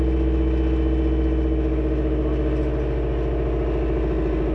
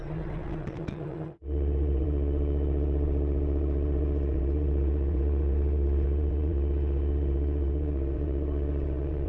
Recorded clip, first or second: first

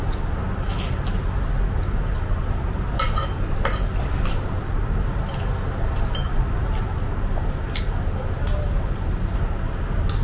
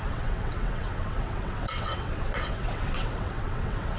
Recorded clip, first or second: first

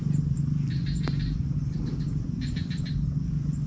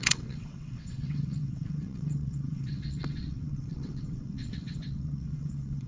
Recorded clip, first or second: first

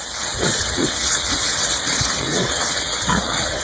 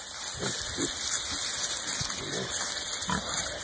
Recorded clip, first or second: second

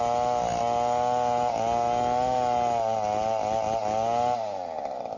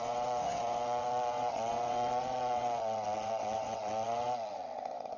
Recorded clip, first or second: first